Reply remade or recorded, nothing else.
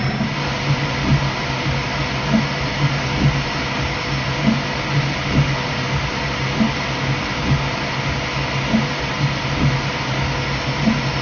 recorded